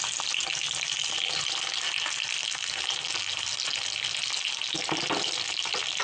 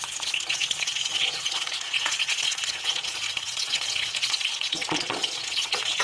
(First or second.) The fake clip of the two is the second